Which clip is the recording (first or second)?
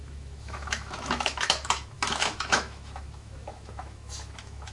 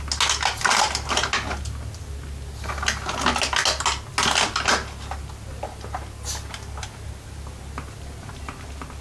second